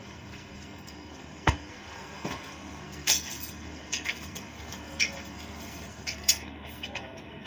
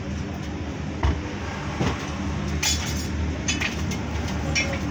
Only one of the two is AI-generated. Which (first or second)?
first